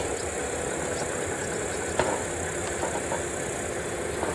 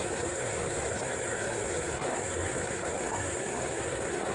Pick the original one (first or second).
first